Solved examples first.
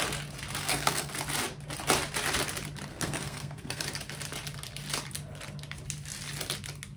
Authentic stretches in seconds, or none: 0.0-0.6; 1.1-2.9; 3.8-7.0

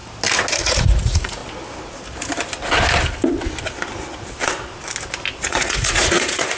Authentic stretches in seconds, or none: 0.0-0.5; 1.4-5.4

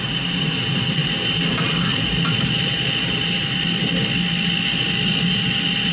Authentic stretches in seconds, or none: 4.0-5.3

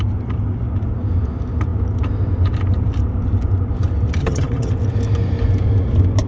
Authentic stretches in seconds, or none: 0.0-4.2; 4.7-6.3

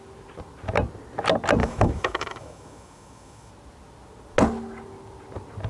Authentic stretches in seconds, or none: 0.0-1.6; 3.5-5.7

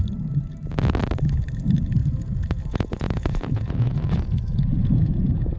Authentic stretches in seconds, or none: 0.0-2.0

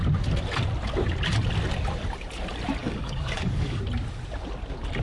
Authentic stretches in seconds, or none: 0.0-2.8; 3.8-5.0